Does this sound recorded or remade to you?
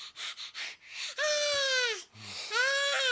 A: recorded